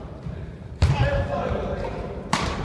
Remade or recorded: remade